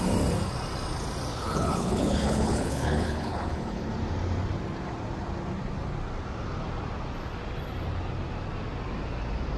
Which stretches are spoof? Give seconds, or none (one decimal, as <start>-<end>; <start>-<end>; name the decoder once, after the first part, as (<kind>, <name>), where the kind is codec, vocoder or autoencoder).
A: 1.3-3.9 (codec, HILCodec)